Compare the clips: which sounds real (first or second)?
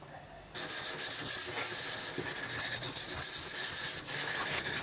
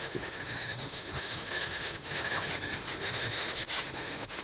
first